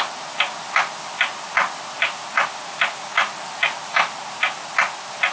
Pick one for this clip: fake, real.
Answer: real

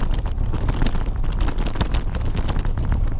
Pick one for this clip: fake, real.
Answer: real